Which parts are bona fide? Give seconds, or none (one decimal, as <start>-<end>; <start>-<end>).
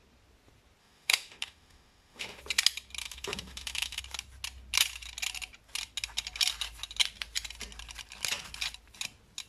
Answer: 0.0-0.8; 2.4-3.0; 4.0-9.5